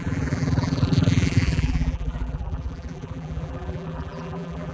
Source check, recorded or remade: remade